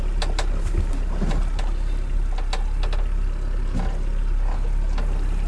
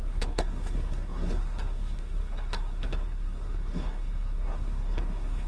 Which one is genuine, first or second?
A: first